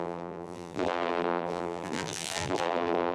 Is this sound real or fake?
fake